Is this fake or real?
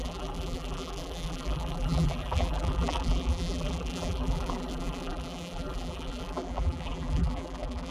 fake